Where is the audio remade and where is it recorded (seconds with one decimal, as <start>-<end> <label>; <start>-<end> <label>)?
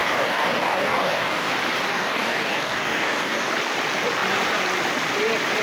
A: 0.0-1.5 remade; 1.5-1.9 recorded; 1.9-3.5 remade; 3.5-5.6 recorded